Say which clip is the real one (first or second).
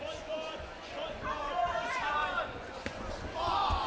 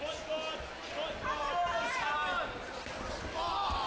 second